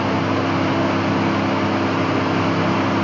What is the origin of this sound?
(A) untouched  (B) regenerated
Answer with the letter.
A